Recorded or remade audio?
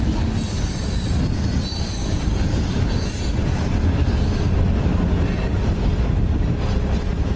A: recorded